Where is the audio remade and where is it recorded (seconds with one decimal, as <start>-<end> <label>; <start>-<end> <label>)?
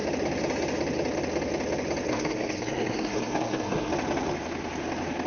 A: 0.0-2.1 recorded; 2.1-3.9 remade; 3.9-5.3 recorded